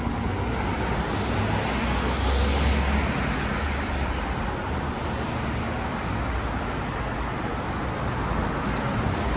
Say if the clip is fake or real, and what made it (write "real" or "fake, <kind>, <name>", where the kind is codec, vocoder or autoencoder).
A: real